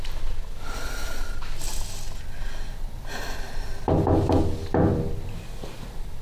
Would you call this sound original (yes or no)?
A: yes